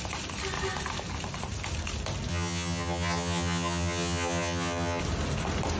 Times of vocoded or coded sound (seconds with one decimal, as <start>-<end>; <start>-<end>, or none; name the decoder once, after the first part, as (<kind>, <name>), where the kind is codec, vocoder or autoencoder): 2.3-5.0 (vocoder, HiFi-GAN)